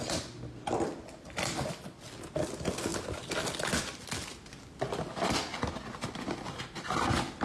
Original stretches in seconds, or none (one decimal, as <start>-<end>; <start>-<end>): 0.0-7.4